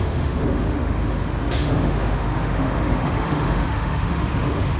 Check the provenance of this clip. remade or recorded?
remade